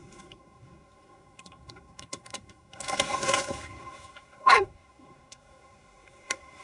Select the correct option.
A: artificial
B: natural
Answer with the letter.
A